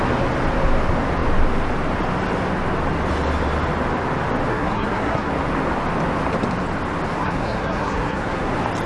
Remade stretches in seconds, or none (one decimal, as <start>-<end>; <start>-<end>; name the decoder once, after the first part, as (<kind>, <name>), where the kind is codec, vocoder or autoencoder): 4.5-5.3 (codec, SNAC); 7.2-8.5